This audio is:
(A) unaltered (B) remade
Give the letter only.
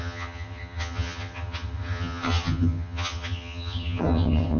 B